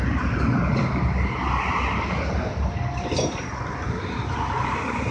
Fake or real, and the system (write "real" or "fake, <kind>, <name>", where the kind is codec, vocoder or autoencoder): real